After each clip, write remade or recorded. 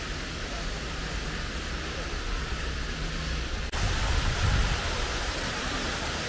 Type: recorded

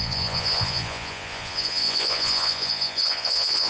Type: remade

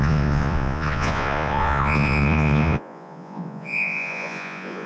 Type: remade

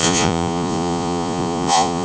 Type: remade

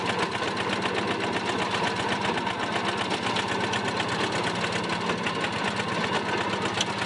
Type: recorded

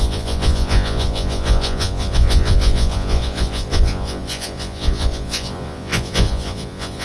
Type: remade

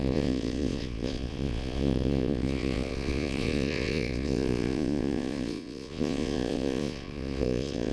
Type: remade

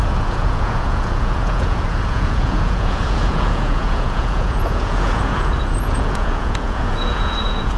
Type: remade